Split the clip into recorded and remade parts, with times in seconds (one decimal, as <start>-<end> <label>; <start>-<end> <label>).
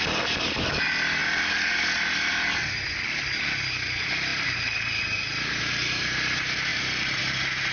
0.0-1.2 recorded; 1.2-2.3 remade; 2.3-4.3 recorded; 4.3-5.0 remade; 5.0-6.7 recorded; 6.7-7.2 remade; 7.2-7.7 recorded